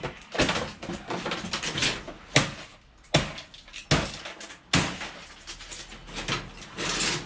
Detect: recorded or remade recorded